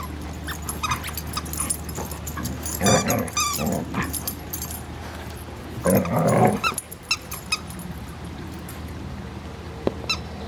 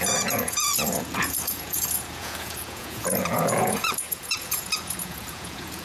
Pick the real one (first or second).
first